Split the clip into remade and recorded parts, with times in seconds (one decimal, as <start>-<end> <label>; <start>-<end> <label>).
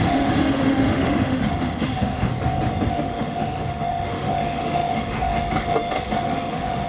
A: 0.0-2.3 remade; 2.3-2.9 recorded; 2.9-6.9 remade